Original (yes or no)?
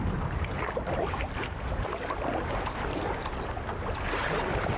yes